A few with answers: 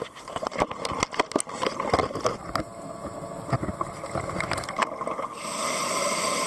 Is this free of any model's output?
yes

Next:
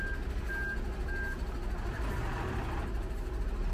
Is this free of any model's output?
yes